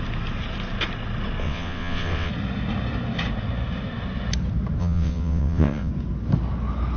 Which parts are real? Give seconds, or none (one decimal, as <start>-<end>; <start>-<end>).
0.0-1.4; 2.3-4.8; 5.9-7.0